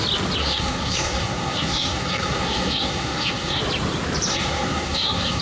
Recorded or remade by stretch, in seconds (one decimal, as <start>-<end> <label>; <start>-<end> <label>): 0.0-0.4 recorded; 0.4-3.6 remade; 3.6-4.3 recorded; 4.3-5.4 remade